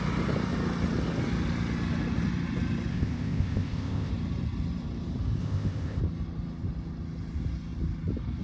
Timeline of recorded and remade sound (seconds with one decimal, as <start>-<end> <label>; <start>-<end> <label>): 0.0-2.9 recorded; 2.9-4.1 remade; 4.1-5.4 recorded; 5.4-6.0 remade; 6.0-8.4 recorded